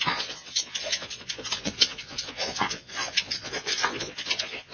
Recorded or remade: remade